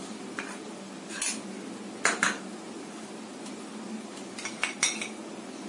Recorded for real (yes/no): yes